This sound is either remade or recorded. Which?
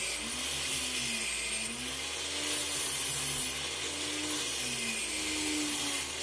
recorded